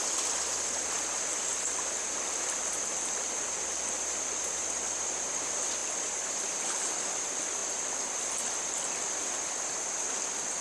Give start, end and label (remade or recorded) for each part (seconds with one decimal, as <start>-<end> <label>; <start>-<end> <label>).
0.0-1.5 recorded; 1.5-3.6 remade; 3.6-5.8 recorded; 5.8-7.0 remade; 7.0-7.6 recorded; 7.6-8.5 remade; 8.5-10.6 recorded